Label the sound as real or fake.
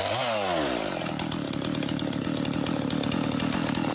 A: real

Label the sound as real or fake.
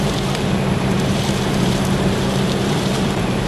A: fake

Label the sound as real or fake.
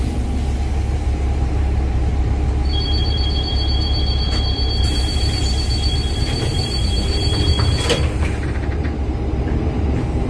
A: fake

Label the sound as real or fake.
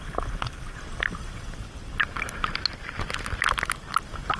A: real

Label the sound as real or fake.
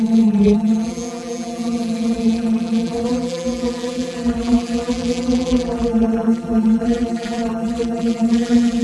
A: fake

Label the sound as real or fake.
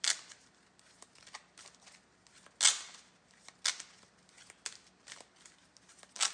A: real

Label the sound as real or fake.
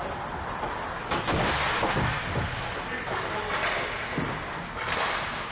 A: real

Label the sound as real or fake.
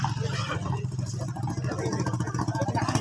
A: real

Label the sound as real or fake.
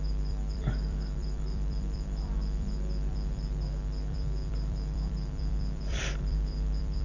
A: fake